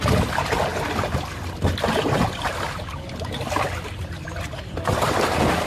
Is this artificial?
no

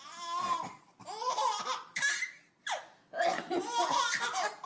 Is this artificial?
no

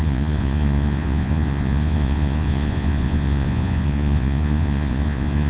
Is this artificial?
yes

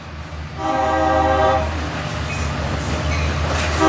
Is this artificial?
no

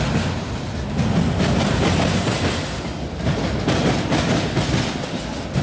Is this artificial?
no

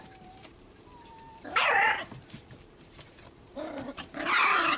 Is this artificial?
yes